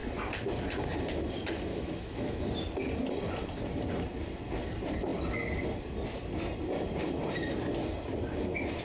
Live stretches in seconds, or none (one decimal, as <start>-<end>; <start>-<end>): 0.0-1.7; 2.4-8.8